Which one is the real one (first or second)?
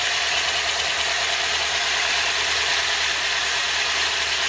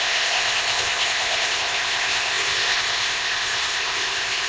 first